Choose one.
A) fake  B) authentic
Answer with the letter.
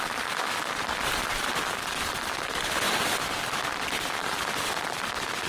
B